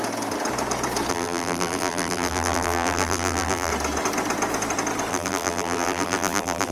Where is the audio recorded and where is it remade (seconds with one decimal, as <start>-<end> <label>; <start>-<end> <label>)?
0.0-1.1 recorded; 1.1-3.7 remade; 3.7-5.1 recorded; 5.1-6.7 remade